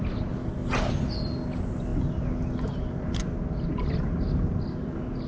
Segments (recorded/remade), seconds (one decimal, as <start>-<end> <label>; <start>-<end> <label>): 0.0-5.3 recorded